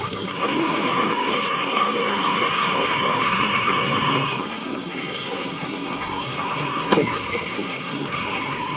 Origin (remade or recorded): remade